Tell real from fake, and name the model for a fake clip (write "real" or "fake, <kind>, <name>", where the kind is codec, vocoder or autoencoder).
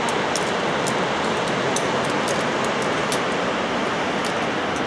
real